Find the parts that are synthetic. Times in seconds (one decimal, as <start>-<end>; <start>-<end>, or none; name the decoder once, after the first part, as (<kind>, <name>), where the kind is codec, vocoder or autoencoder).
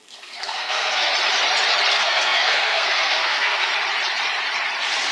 0.0-1.1 (codec, SNAC); 1.9-3.7